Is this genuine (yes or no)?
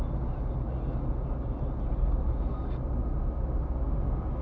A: yes